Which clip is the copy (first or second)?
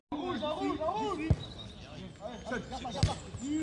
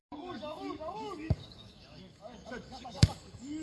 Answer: second